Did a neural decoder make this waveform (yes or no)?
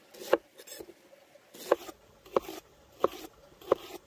no